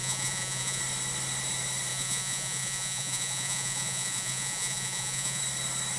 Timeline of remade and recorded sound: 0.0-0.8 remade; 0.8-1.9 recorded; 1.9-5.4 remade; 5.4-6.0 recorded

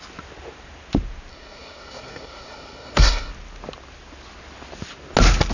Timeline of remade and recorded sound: 0.0-1.3 recorded; 1.3-3.3 remade; 3.3-5.5 recorded